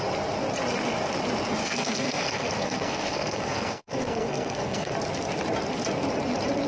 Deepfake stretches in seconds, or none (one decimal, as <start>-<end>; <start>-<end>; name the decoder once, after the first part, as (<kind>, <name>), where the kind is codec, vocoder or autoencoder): 1.6-4.9 (codec, SNAC)